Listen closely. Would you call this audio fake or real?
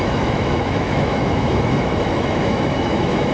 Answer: fake